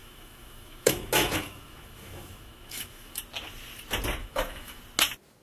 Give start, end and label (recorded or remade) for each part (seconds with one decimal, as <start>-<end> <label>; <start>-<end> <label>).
0.0-3.2 remade; 3.2-4.2 recorded; 4.2-4.8 remade; 4.8-5.4 recorded